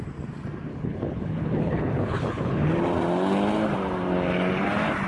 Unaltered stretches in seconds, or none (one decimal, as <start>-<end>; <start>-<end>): 0.0-0.7; 2.7-5.1